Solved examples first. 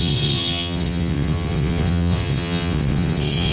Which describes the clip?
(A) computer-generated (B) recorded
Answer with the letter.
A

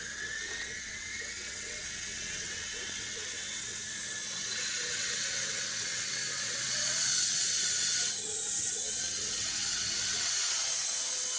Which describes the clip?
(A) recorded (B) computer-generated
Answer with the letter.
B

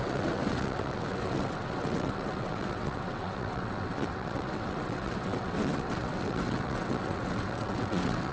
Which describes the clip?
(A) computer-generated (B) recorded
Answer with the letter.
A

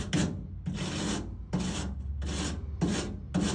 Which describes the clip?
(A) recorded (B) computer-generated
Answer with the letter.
A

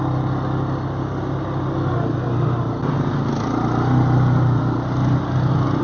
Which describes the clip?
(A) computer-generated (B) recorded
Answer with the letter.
B